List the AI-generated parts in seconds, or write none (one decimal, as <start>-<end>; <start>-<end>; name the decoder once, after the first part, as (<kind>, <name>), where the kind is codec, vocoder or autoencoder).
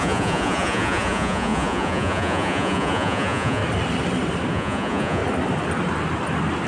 0.0-3.6 (vocoder, Vocos); 4.5-5.2